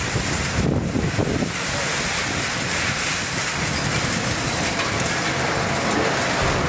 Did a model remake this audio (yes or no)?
no